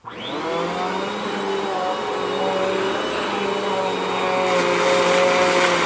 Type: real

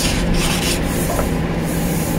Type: fake